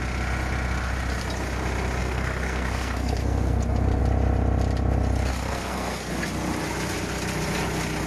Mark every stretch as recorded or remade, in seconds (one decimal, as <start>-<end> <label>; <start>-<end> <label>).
0.0-2.0 recorded; 2.0-4.0 remade; 4.0-5.3 recorded; 5.3-6.1 remade; 6.1-8.1 recorded